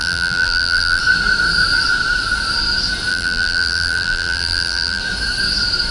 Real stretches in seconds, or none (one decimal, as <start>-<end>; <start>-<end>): 1.0-3.1; 5.0-5.9